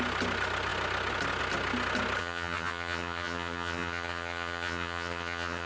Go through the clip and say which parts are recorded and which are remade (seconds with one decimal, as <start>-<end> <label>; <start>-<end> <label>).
0.0-2.2 recorded; 2.2-5.7 remade